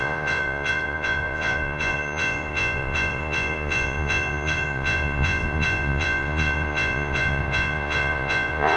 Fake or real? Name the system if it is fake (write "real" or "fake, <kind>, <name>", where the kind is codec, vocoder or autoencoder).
fake, vocoder, Vocos